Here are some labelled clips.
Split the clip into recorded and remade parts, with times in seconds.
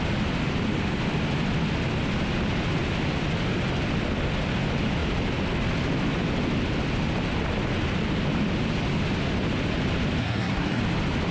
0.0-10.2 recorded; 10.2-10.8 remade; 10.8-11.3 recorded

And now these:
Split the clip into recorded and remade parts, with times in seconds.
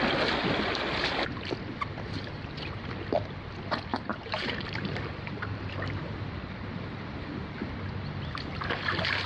0.0-1.9 recorded; 1.9-2.8 remade; 2.8-3.9 recorded; 3.9-7.7 remade; 7.7-9.3 recorded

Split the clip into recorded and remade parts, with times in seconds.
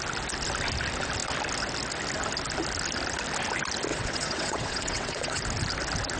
0.0-3.9 recorded; 3.9-5.4 remade; 5.4-6.2 recorded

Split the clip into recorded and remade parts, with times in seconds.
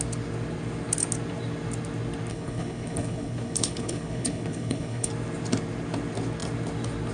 0.0-2.3 recorded; 2.3-5.1 remade; 5.1-7.1 recorded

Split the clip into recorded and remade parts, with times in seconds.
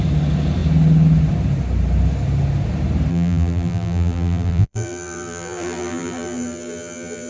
0.0-3.1 recorded; 3.1-7.3 remade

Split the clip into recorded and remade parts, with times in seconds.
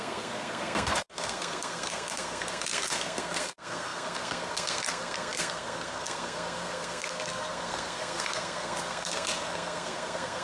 0.0-10.4 remade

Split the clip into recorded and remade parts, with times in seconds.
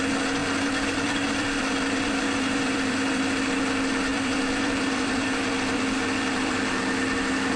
0.0-0.4 recorded; 0.4-3.3 remade; 3.3-4.1 recorded; 4.1-6.7 remade; 6.7-7.6 recorded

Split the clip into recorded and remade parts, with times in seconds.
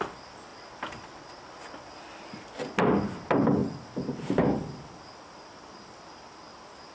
0.0-6.9 recorded